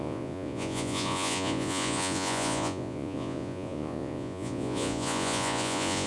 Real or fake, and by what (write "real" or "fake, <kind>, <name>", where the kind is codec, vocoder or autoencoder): fake, vocoder, Vocos